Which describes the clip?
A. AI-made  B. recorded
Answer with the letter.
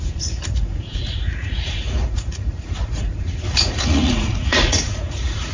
A